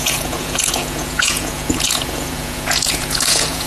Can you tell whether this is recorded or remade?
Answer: remade